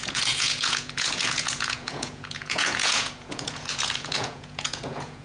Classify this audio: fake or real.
fake